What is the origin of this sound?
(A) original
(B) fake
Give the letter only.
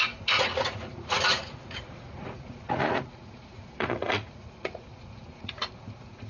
B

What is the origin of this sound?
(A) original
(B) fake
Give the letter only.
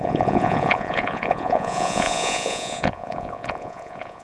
B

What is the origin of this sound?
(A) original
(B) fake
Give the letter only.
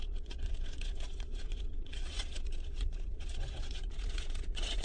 B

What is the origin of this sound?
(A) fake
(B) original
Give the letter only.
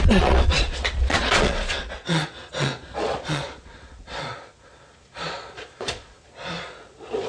A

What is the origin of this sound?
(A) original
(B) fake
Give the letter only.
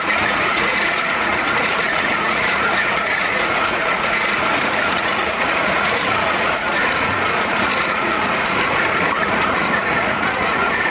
B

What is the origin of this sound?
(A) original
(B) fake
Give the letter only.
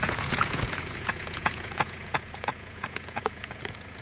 B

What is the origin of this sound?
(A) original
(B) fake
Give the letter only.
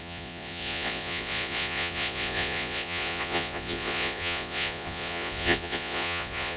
B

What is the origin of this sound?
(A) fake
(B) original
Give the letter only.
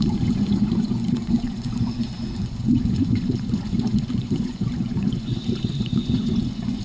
A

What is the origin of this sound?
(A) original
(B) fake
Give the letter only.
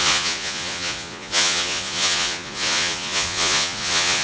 B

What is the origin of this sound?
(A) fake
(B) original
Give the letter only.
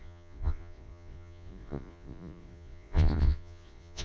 A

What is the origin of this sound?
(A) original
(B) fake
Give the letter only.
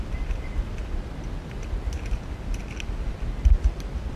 A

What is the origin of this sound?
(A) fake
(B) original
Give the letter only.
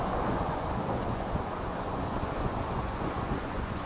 A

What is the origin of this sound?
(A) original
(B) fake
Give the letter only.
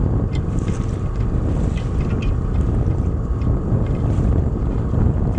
A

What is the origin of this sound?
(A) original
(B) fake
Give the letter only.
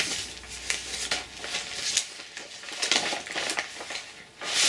A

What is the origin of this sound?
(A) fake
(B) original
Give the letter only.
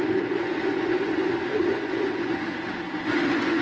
A